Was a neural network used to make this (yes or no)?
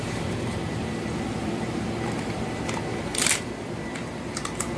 yes